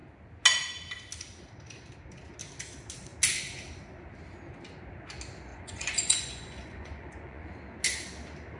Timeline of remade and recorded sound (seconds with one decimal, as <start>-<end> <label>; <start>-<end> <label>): 0.0-5.5 recorded; 5.5-7.5 remade; 7.5-8.6 recorded